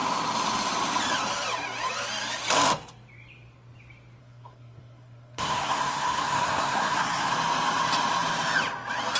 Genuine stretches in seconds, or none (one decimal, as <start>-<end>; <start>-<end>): 0.0-4.2; 7.3-9.2